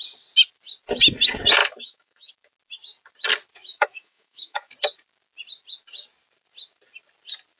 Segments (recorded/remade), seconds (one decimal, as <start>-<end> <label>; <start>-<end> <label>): 0.0-1.6 recorded; 1.6-2.3 remade; 2.3-3.7 recorded; 3.7-4.7 remade; 4.7-7.6 recorded